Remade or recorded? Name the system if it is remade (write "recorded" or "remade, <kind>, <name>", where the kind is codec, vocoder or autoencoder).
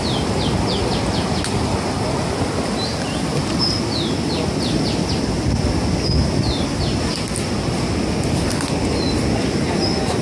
recorded